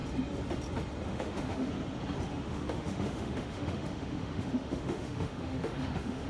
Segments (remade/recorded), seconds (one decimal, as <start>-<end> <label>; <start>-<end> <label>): 0.0-1.1 recorded; 1.1-1.7 remade; 1.7-2.3 recorded; 2.3-6.3 remade